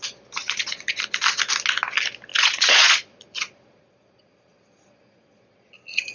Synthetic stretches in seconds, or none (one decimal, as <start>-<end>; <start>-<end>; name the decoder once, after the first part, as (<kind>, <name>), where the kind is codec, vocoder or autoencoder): 0.4-1.0 (vocoder, Vocos); 2.3-6.1